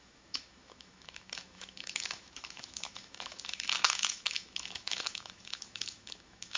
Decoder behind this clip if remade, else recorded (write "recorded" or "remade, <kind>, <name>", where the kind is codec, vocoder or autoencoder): remade, autoencoder, DAC-VAE